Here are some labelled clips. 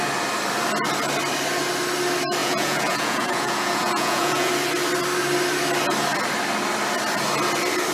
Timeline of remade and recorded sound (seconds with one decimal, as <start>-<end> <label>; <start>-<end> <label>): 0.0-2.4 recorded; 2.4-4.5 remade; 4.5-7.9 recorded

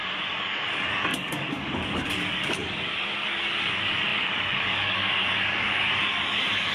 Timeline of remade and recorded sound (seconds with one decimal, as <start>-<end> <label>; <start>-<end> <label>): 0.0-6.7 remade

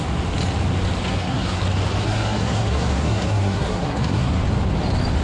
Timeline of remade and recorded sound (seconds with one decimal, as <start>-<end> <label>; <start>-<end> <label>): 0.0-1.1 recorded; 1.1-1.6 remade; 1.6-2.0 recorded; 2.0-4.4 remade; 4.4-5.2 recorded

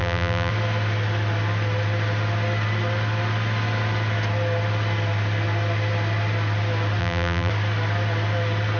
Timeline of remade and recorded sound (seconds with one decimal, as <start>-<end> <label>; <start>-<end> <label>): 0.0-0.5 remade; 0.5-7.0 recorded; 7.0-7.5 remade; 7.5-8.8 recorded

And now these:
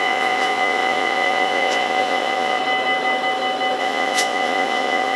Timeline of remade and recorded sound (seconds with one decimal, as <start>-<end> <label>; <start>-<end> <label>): 0.0-2.6 remade; 2.6-3.8 recorded; 3.8-5.2 remade